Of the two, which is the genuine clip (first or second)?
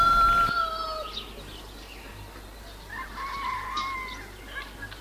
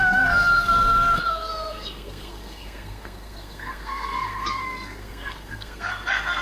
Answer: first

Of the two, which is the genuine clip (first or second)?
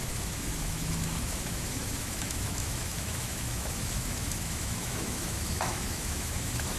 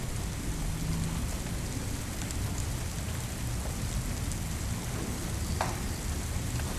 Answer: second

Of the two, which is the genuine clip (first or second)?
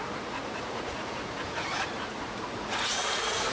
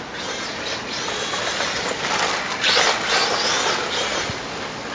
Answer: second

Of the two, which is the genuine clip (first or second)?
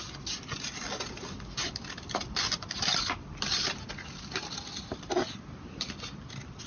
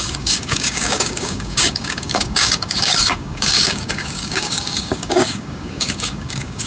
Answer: first